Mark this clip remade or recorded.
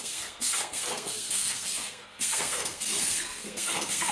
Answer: remade